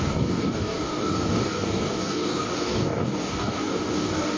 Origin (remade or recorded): remade